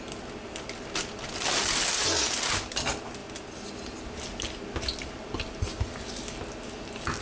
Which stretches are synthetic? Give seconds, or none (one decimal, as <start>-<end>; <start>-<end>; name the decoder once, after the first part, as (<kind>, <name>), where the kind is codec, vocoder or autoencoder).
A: none